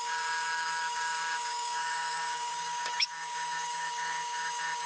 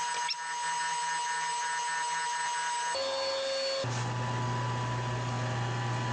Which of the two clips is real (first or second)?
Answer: second